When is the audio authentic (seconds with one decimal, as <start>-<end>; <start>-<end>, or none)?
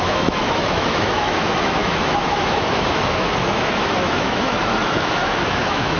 none